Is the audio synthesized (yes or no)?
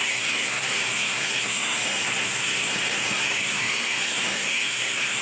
yes